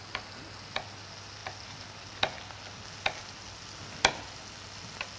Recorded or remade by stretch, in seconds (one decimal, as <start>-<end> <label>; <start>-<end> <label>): 0.0-5.2 recorded

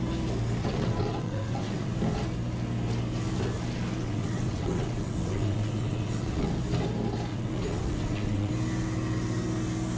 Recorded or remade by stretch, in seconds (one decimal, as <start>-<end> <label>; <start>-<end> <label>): 0.0-0.6 recorded; 0.6-1.9 remade; 1.9-4.0 recorded; 4.0-6.5 remade; 6.5-7.3 recorded; 7.3-8.5 remade; 8.5-10.0 recorded

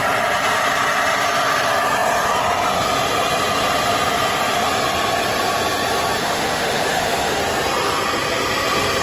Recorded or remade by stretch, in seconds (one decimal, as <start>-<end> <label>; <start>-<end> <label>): 0.0-6.2 recorded; 6.2-7.4 remade; 7.4-9.0 recorded

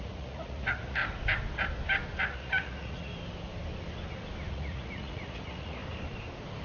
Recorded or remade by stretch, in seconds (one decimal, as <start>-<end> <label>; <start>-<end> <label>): 0.0-1.0 remade; 1.0-2.2 recorded; 2.2-3.1 remade; 3.1-4.5 recorded; 4.5-5.8 remade; 5.8-6.6 recorded

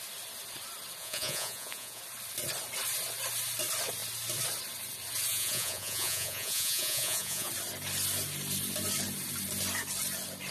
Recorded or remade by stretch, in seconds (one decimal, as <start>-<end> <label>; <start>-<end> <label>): 0.0-1.0 recorded; 1.0-2.0 remade; 2.0-5.3 recorded; 5.3-7.5 remade; 7.5-10.5 recorded

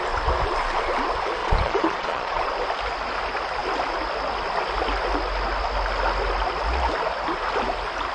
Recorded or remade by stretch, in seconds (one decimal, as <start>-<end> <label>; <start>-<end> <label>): 0.0-1.4 recorded; 1.4-2.5 remade; 2.5-8.1 recorded

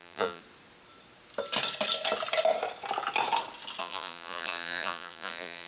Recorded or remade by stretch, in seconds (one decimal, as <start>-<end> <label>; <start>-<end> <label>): 0.0-0.4 remade; 0.4-3.8 recorded; 3.8-5.7 remade

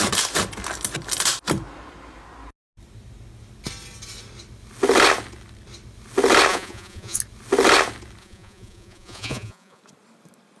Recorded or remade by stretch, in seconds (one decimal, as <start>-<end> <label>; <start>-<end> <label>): 0.0-6.5 recorded; 6.5-7.2 remade; 7.2-8.2 recorded; 8.2-9.8 remade; 9.8-10.6 recorded